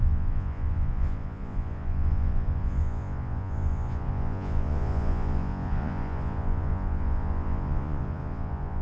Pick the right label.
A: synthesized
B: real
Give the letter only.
A